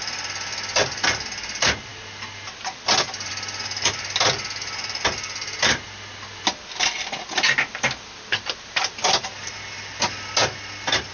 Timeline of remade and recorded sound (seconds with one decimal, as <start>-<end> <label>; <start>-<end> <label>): 0.0-11.1 recorded